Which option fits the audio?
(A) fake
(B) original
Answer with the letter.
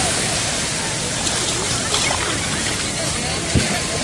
B